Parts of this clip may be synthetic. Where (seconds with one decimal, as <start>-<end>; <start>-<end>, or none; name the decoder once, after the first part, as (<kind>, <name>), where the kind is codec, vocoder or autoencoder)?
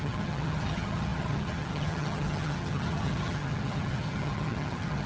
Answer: 0.0-5.1 (vocoder, HiFi-GAN)